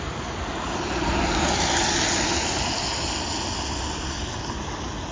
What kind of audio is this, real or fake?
real